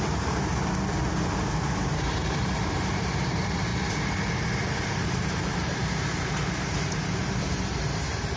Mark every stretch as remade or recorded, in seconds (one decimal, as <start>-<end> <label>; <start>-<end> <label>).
0.0-0.5 remade; 0.5-1.4 recorded; 1.4-3.7 remade; 3.7-4.8 recorded; 4.8-8.4 remade